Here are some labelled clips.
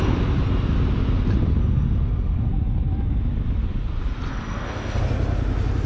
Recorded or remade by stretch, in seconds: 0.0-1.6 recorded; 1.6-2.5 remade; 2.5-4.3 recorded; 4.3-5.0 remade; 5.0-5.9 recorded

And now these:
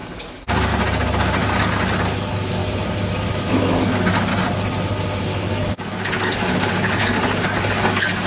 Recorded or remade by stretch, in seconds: 0.0-0.7 remade; 0.7-2.0 recorded; 2.0-2.6 remade; 2.6-3.3 recorded; 3.3-4.3 remade; 4.3-5.2 recorded; 5.2-8.3 remade

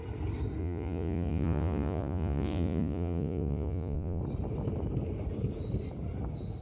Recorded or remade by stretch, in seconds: 0.0-0.6 recorded; 0.6-4.2 remade; 4.2-6.6 recorded

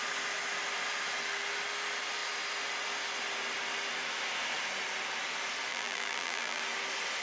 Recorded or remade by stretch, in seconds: 0.0-5.7 recorded; 5.7-6.6 remade; 6.6-7.2 recorded

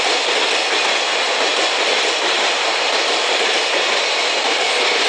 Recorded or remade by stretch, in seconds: 0.0-5.1 recorded

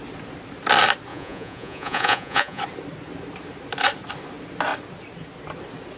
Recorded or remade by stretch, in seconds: 0.0-1.1 recorded; 1.1-2.6 remade; 2.6-6.0 recorded

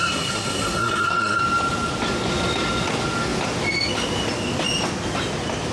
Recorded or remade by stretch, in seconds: 0.0-1.4 remade; 1.4-5.7 recorded